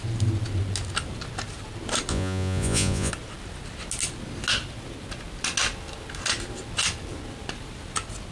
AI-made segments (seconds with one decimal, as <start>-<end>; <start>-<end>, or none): 2.1-3.1